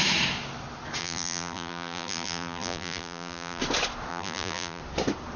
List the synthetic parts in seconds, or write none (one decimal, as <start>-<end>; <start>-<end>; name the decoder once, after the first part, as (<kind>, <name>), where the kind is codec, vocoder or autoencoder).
1.0-3.6 (vocoder, BigVGAN v2); 4.1-4.8